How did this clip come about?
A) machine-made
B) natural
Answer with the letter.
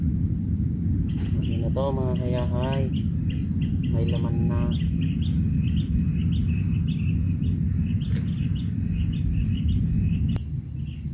B